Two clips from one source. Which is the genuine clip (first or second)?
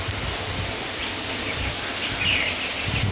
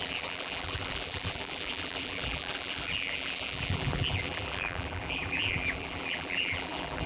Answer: first